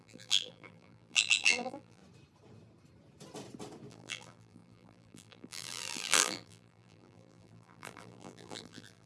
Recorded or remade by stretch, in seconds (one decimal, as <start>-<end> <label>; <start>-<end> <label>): 0.0-2.0 remade; 2.0-3.9 recorded; 3.9-9.1 remade